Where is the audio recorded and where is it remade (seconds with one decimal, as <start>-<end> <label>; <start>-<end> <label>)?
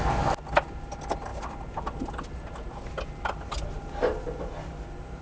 0.0-5.2 recorded